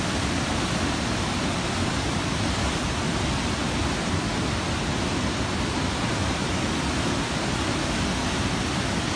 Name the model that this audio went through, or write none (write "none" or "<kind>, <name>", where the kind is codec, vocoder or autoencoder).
none